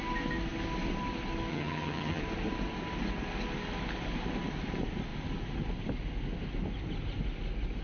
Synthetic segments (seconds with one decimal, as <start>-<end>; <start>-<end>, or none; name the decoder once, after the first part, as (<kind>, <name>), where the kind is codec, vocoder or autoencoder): 1.5-2.2 (vocoder, HiFi-GAN)